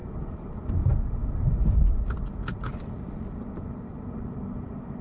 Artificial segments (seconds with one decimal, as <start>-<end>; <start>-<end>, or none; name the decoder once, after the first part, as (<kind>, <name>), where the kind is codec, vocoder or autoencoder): 0.0-0.7 (vocoder, BigVGAN v2); 1.2-4.1